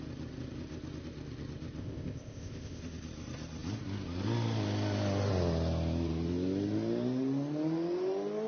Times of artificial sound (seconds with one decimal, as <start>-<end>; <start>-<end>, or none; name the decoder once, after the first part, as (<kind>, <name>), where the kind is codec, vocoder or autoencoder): 1.8-2.8 (codec, ZipCodec)